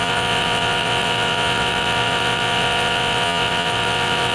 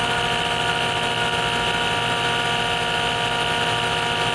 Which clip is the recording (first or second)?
second